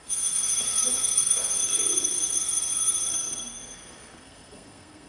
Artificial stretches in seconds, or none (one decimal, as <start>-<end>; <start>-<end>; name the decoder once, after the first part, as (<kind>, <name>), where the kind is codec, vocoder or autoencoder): 0.0-5.1 (codec, SNAC)